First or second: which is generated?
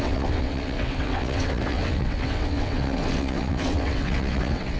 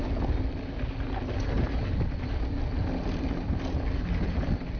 first